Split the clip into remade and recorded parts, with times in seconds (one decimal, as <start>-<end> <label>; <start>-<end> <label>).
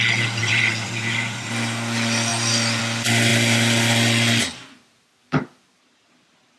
0.0-0.4 recorded; 0.4-1.5 remade; 1.5-6.6 recorded